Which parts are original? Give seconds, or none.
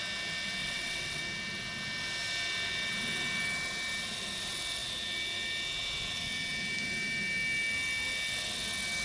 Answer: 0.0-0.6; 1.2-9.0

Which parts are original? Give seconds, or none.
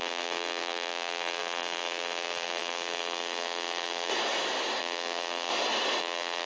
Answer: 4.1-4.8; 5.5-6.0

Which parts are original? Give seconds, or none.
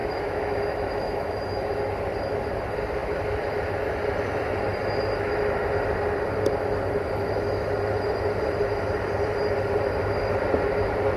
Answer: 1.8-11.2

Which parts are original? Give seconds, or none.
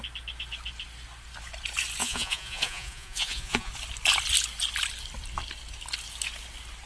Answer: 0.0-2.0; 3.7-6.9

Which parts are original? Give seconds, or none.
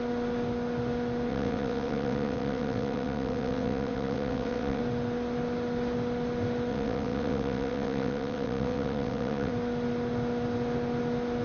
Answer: 0.0-1.3; 4.8-6.7; 9.5-11.4